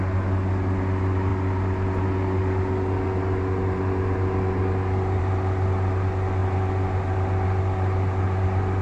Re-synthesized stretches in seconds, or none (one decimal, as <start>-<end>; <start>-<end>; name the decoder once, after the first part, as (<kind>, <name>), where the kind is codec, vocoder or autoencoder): none